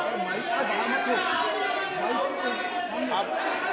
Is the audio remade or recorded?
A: recorded